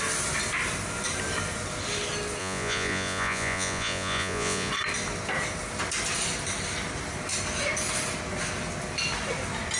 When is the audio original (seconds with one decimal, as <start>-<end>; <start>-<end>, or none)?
0.0-2.4; 4.7-9.8